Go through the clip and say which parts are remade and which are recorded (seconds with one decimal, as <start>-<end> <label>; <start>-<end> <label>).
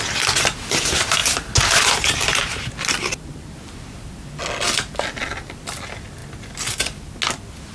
0.0-7.7 recorded